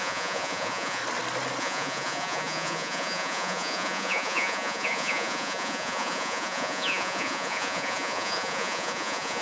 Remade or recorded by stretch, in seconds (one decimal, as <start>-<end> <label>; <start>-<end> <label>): 0.0-1.0 remade; 1.0-1.6 recorded; 1.6-9.4 remade